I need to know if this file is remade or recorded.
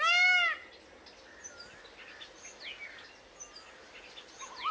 recorded